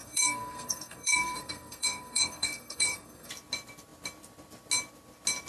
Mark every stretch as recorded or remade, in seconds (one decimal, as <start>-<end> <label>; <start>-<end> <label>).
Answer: 0.0-3.3 remade; 3.3-5.5 recorded